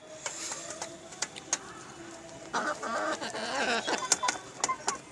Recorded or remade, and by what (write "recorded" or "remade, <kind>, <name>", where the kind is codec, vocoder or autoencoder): recorded